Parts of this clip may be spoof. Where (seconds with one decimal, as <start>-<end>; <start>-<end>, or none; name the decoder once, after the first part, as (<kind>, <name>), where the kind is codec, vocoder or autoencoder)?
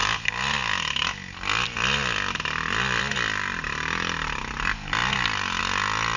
none